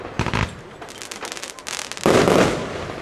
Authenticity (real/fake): real